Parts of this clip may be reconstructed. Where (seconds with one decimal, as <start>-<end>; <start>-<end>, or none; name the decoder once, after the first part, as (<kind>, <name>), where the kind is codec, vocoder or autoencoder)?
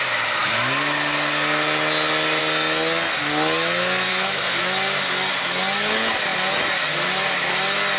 4.1-4.6 (codec, SNAC)